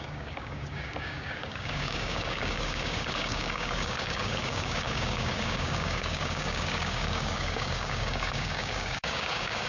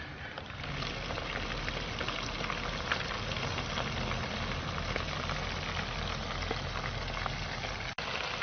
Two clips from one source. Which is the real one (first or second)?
second